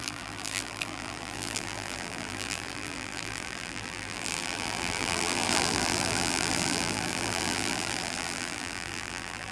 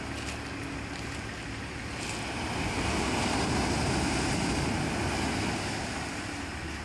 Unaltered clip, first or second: second